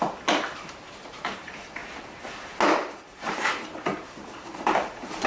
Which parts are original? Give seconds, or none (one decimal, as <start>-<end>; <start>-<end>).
1.8-2.7